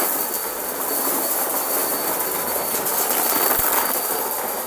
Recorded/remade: recorded